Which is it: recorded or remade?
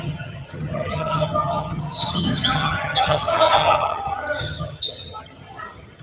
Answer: remade